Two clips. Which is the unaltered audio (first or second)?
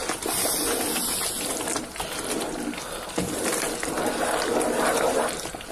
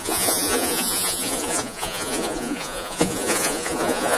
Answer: first